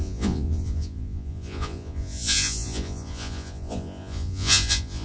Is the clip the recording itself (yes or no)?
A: no